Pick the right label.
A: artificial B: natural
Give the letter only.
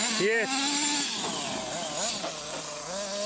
B